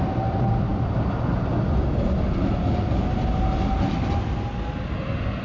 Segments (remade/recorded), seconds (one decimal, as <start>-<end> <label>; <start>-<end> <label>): 0.0-5.4 recorded